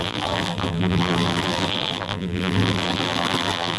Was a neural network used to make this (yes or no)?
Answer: yes